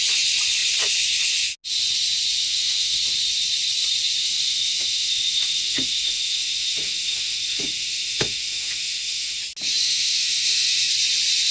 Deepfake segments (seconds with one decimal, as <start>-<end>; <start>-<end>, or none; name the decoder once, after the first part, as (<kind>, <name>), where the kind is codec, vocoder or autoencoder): 2.4-3.0 (autoencoder, DAC-VAE); 4.2-9.4; 9.8-10.9